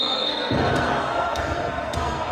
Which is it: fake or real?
fake